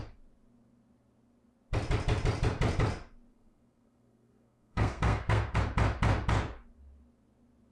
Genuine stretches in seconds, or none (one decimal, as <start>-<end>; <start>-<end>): 0.0-3.3; 5.6-7.7